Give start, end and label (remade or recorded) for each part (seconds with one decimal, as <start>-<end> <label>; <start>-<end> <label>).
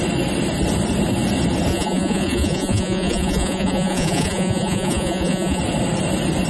0.0-1.7 recorded; 1.7-5.6 remade; 5.6-6.5 recorded